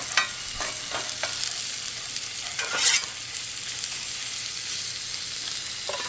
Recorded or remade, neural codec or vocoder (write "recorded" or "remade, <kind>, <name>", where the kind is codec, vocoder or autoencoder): recorded